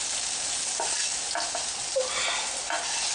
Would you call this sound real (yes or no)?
yes